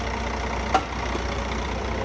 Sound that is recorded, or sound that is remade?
recorded